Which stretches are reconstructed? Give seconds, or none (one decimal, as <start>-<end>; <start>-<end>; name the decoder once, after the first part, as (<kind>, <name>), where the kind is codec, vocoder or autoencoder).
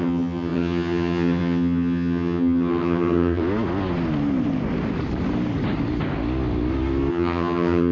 0.0-3.4 (vocoder, HiFi-GAN); 7.1-7.9